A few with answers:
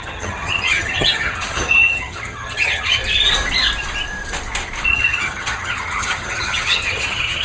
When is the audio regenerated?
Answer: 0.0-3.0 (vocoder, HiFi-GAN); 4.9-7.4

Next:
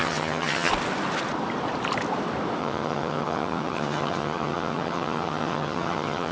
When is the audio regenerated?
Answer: 0.0-0.7 (vocoder, HiFi-GAN); 2.6-6.3

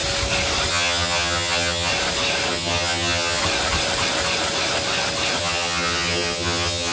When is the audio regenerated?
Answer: 0.7-1.9 (vocoder, HiFi-GAN); 2.5-3.4; 5.4-6.9

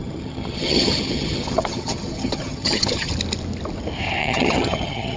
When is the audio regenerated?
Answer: 0.0-3.1 (vocoder, HiFi-GAN); 4.2-5.2

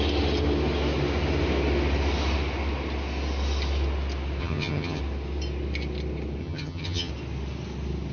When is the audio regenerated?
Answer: 4.4-5.0 (vocoder, HiFi-GAN); 6.4-7.1